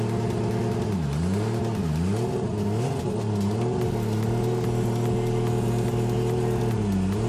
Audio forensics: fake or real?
real